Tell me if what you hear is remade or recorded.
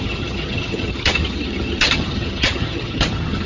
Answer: remade